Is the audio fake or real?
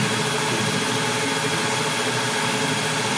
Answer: real